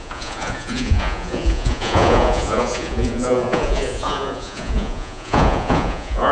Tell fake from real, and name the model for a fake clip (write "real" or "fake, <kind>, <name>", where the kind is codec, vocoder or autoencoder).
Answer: fake, vocoder, Vocos